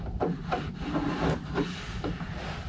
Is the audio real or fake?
real